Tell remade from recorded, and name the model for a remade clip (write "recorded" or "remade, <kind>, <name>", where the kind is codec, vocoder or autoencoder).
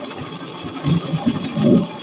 recorded